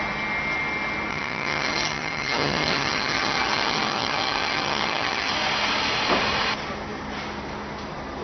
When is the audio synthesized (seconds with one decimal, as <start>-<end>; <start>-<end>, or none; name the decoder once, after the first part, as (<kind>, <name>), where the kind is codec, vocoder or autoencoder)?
1.1-5.3 (vocoder, HiFi-GAN)